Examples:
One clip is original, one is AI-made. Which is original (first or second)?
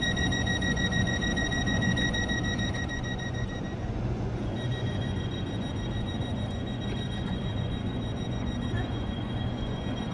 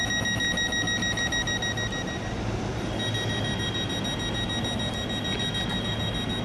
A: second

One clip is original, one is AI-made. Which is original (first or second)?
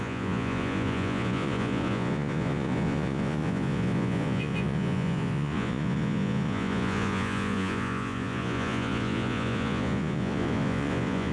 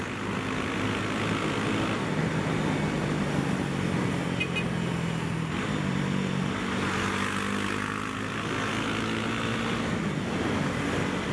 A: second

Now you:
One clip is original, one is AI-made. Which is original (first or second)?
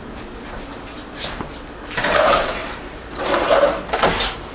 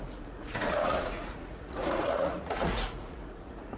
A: first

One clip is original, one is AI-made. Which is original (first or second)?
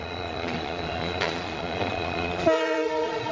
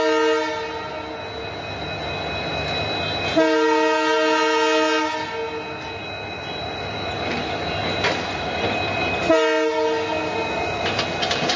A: second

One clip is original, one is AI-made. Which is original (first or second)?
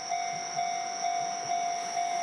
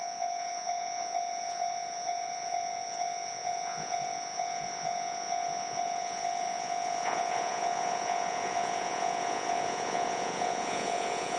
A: first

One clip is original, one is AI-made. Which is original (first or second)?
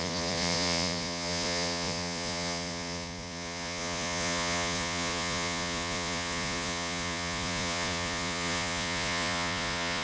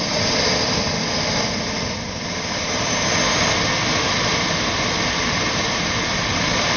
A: second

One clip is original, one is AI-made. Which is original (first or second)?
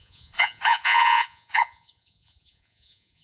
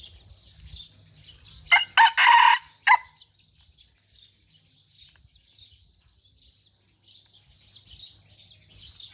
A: second